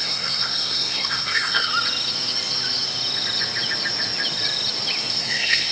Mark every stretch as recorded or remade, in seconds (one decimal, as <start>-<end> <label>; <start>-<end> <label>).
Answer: 0.0-1.7 remade; 1.7-5.1 recorded; 5.1-5.7 remade